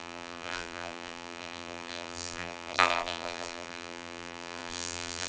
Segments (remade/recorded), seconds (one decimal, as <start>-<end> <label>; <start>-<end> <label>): 0.0-5.3 remade